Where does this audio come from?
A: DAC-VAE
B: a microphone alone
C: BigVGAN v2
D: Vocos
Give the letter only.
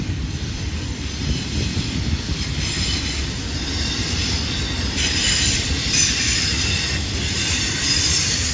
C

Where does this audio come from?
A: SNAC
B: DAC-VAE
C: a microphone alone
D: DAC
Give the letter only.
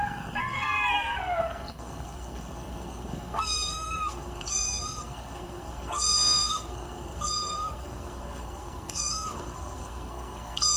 A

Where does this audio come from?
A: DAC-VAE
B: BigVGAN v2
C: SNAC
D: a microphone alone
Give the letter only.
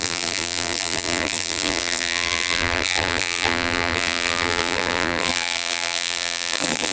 B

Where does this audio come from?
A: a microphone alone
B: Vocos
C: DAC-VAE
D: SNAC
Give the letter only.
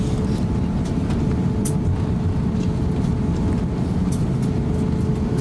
A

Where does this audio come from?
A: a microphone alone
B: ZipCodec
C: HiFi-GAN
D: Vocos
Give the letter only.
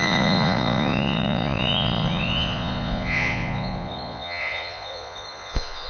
D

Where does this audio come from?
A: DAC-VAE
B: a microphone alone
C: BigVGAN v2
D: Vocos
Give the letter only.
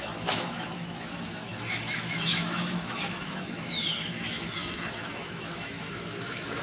A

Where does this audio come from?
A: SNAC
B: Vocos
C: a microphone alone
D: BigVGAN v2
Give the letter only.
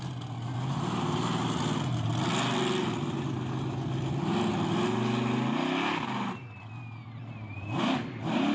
C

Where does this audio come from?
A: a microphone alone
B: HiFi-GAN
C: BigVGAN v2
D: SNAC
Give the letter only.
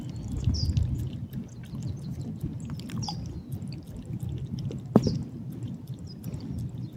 A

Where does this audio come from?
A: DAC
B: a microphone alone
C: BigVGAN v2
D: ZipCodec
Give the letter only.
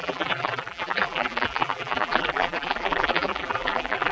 C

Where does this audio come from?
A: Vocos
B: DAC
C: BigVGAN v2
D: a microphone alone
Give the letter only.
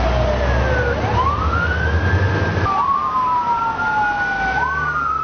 D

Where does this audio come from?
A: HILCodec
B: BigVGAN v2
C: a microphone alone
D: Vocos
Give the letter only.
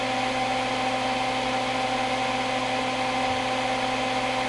C